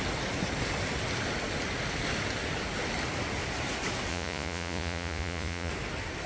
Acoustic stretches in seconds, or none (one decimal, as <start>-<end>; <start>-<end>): 0.0-4.1; 5.7-6.3